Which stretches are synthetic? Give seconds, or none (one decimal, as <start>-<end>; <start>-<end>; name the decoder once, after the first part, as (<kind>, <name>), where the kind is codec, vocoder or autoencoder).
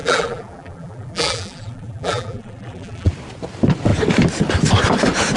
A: 0.0-3.1 (vocoder, BigVGAN v2)